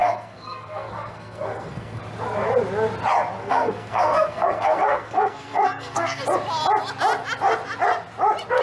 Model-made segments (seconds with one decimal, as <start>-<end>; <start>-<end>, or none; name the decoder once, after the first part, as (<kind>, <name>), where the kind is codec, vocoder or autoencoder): 0.0-2.0 (codec, SNAC); 3.4-6.2